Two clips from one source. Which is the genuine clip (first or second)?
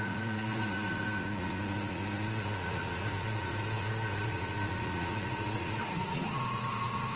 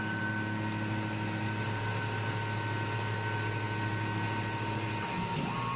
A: second